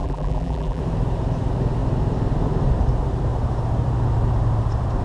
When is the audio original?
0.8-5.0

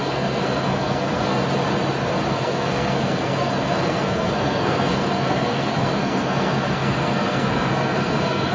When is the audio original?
1.4-2.3

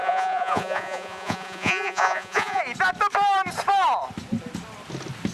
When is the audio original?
2.6-5.3